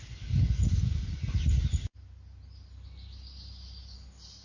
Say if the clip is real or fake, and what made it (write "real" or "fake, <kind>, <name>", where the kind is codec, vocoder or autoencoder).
real